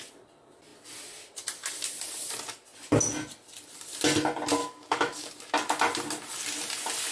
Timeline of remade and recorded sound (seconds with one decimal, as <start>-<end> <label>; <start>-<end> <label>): 0.0-4.6 recorded; 4.6-5.3 remade; 5.3-7.1 recorded